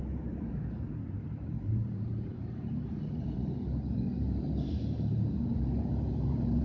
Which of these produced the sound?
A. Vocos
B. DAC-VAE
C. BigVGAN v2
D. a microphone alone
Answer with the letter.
C